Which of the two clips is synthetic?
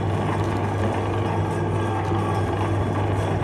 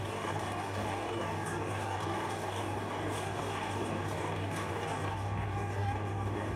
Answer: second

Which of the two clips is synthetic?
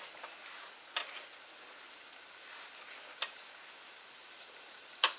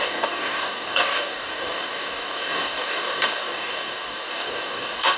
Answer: second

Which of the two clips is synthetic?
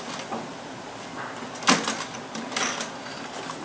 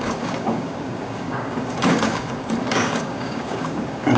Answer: second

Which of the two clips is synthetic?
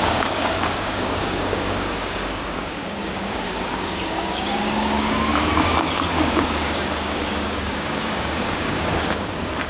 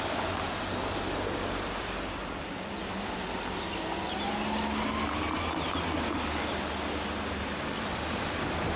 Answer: first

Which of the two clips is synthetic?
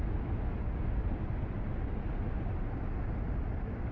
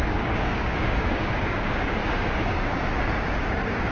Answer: second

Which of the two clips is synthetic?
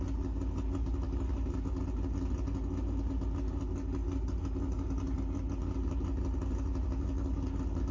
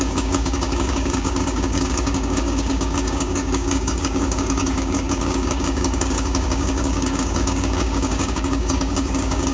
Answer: second